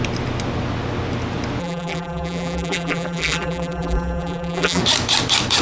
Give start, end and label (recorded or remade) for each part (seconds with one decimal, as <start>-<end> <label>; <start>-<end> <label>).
0.0-1.6 recorded; 1.6-4.8 remade; 4.8-5.6 recorded